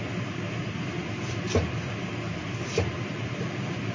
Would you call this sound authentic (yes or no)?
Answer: yes